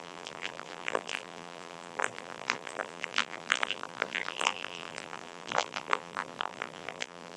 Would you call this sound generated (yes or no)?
yes